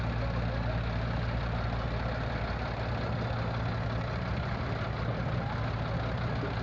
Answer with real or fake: real